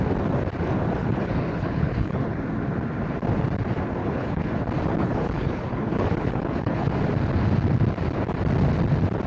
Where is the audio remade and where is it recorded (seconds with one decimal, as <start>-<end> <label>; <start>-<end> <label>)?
0.0-1.0 recorded; 1.0-2.4 remade; 2.4-4.0 recorded; 4.0-4.5 remade; 4.5-4.9 recorded; 4.9-6.9 remade; 6.9-9.3 recorded